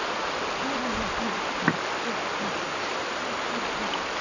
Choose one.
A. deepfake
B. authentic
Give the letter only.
B